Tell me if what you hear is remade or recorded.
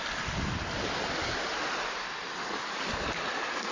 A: recorded